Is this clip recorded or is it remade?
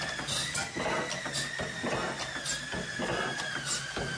recorded